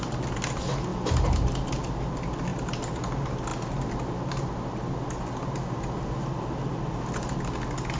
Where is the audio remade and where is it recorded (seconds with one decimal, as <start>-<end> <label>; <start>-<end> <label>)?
0.0-0.9 recorded; 0.9-1.7 remade; 1.7-8.0 recorded